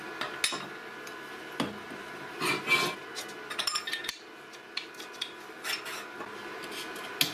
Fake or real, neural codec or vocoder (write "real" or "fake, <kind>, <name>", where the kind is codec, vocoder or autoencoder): real